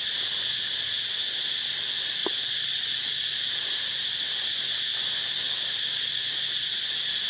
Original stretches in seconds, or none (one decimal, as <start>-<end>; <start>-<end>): 0.0-7.3